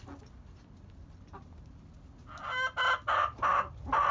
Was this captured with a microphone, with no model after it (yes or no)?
yes